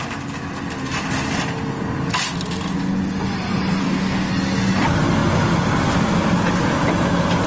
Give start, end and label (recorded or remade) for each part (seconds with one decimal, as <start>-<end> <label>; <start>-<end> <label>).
0.0-3.8 recorded; 3.8-4.3 remade; 4.3-7.5 recorded